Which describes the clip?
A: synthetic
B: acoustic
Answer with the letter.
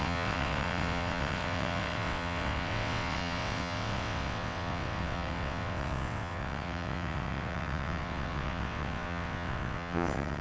A